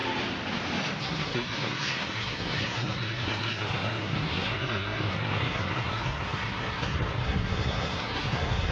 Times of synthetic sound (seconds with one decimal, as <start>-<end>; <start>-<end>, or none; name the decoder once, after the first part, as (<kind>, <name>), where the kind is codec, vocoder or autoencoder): 1.0-8.7 (codec, SNAC)